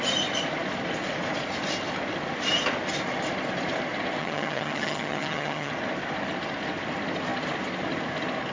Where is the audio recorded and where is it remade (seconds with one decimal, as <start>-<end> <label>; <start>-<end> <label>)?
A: 0.0-4.2 recorded; 4.2-5.7 remade; 5.7-8.5 recorded